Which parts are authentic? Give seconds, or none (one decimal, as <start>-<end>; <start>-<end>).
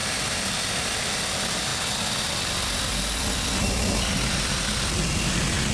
0.0-5.7